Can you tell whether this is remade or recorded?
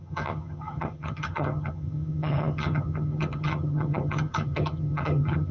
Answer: remade